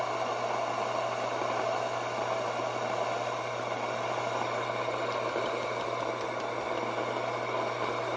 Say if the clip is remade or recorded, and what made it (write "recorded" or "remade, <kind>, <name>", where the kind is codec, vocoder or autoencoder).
recorded